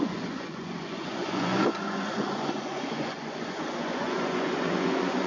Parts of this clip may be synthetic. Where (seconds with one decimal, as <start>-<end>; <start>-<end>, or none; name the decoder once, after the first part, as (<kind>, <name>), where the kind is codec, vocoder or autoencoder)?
0.0-5.3 (vocoder, Vocos)